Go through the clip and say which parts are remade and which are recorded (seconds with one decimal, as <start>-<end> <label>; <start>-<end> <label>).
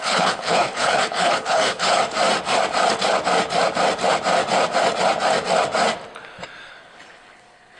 0.0-2.0 remade; 2.0-6.7 recorded; 6.7-7.8 remade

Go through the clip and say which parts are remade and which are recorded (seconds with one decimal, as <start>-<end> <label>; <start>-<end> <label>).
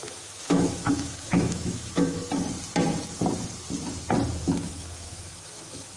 0.0-2.2 remade; 2.2-4.4 recorded; 4.4-6.0 remade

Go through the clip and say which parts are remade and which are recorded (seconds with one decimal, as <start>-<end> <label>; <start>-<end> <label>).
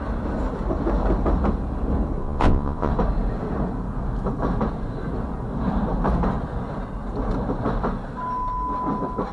0.0-2.2 recorded; 2.2-2.9 remade; 2.9-9.3 recorded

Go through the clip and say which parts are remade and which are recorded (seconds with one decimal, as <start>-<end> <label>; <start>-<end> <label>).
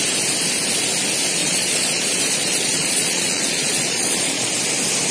0.0-1.4 recorded; 1.4-4.5 remade; 4.5-5.1 recorded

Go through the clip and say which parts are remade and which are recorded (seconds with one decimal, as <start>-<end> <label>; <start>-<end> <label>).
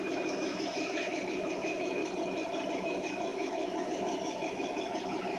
0.0-2.0 remade; 2.0-2.7 recorded; 2.7-5.4 remade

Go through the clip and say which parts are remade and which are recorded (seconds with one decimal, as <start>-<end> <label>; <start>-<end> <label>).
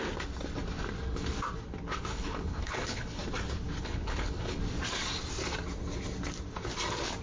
0.0-2.1 recorded; 2.1-3.2 remade; 3.2-3.8 recorded; 3.8-4.6 remade; 4.6-7.2 recorded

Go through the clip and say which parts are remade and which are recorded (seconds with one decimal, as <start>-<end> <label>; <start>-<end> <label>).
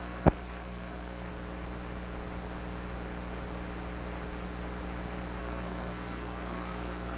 0.0-1.3 remade; 1.3-5.4 recorded; 5.4-7.2 remade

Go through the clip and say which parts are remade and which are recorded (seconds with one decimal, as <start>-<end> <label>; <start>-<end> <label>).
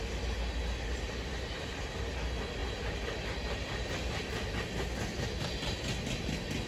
0.0-6.7 recorded